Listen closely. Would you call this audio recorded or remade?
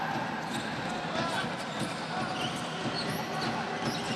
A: recorded